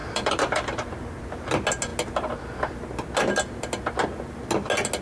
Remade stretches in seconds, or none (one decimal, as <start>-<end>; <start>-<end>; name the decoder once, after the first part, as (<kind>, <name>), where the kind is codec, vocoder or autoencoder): 0.0-1.2 (vocoder, BigVGAN v2)